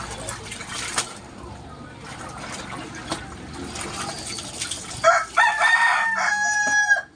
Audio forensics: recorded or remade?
recorded